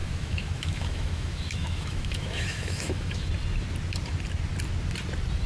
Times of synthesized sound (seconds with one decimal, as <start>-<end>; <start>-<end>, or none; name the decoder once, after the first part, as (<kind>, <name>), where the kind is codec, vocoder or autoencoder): 0.0-3.3 (autoencoder, DAC-VAE)